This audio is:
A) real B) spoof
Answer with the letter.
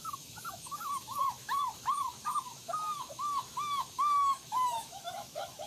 B